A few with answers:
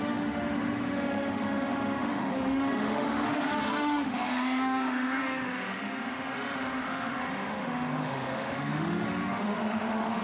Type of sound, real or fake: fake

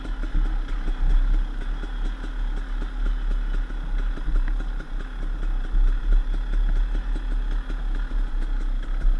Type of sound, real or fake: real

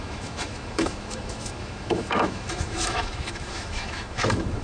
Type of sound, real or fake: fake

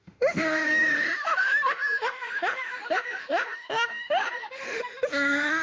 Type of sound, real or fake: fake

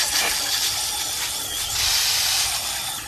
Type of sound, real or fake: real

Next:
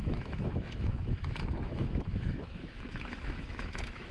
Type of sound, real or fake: fake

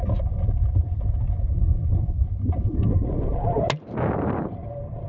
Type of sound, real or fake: real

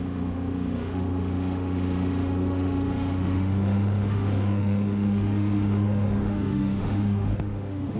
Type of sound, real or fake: fake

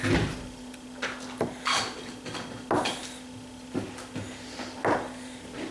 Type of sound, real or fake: real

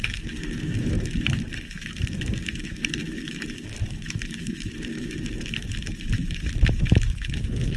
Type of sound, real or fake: fake